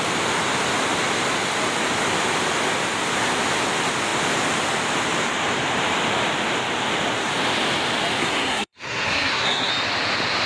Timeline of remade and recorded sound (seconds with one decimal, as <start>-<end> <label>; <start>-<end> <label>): 0.0-8.2 recorded; 8.2-9.7 remade; 9.7-10.5 recorded